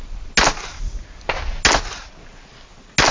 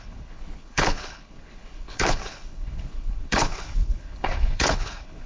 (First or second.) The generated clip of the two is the second